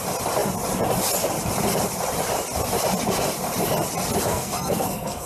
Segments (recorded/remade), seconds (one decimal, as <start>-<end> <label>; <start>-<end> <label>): 0.0-4.3 recorded; 4.3-5.3 remade